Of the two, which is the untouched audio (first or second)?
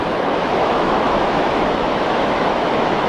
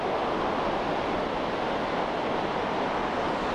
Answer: second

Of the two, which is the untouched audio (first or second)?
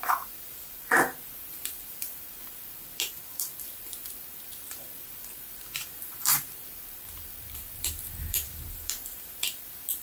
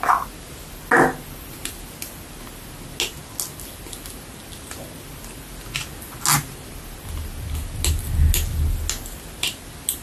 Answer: second